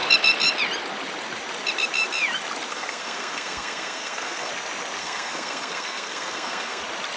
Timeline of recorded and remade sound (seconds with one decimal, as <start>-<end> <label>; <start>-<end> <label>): 0.0-2.7 recorded; 2.7-4.5 remade; 4.5-5.0 recorded; 5.0-6.8 remade; 6.8-7.2 recorded